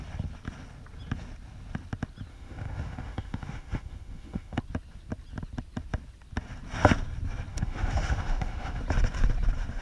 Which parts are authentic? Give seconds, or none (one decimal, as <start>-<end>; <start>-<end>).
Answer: 0.0-2.3; 4.6-7.5; 8.8-9.8